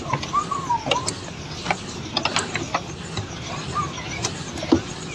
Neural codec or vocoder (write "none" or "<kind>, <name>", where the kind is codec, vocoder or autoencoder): none